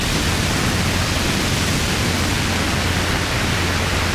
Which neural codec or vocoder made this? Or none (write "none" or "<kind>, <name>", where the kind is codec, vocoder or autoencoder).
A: none